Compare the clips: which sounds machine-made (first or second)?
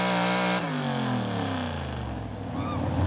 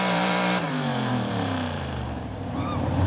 second